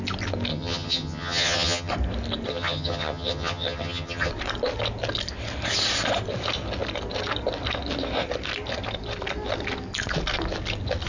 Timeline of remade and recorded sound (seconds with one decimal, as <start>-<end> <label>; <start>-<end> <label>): 0.0-0.5 recorded; 0.5-1.9 remade; 1.9-2.5 recorded; 2.5-4.3 remade; 4.3-11.1 recorded